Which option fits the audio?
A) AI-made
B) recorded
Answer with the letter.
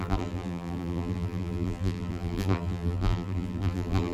A